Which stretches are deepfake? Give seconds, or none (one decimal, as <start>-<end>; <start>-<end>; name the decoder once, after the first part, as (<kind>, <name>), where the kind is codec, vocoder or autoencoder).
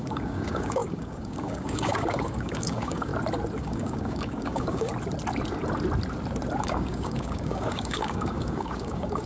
0.0-3.1 (codec, DAC); 3.6-4.9; 6.6-9.3